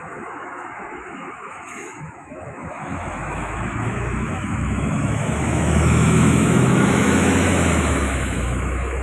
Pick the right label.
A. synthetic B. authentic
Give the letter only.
A